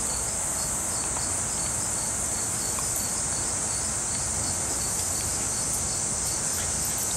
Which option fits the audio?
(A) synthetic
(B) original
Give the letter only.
B